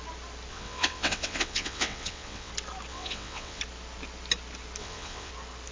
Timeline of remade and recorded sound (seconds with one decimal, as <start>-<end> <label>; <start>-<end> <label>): 0.0-0.5 recorded; 0.5-2.5 remade; 2.5-2.9 recorded; 2.9-3.6 remade; 3.6-4.8 recorded; 4.8-5.3 remade; 5.3-5.7 recorded